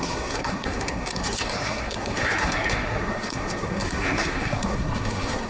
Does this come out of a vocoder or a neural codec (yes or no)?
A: yes